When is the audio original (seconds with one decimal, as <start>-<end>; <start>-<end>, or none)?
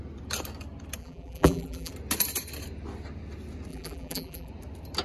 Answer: 0.0-1.0; 1.9-3.7; 4.5-5.0